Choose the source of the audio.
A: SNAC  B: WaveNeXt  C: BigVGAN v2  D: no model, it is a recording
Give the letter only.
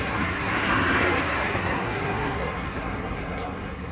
A